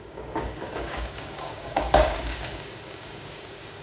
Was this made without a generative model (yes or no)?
no